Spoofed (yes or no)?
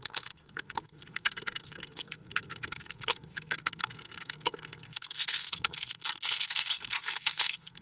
yes